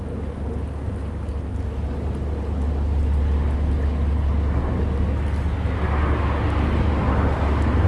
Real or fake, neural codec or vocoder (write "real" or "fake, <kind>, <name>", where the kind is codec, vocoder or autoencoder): real